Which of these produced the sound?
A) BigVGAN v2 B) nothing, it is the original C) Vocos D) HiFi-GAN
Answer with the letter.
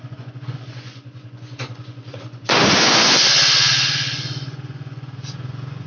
C